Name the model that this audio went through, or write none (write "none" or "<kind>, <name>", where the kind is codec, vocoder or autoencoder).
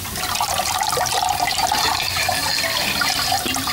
none